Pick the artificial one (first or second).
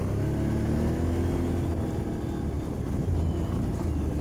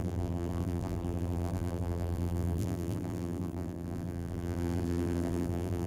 second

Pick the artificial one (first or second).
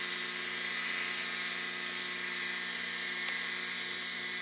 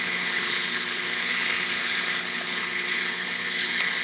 second